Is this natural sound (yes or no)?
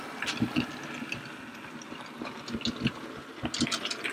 yes